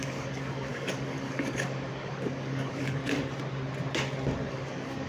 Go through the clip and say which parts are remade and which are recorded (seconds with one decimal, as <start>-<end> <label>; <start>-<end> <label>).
0.0-3.0 remade; 3.0-4.5 recorded; 4.5-5.1 remade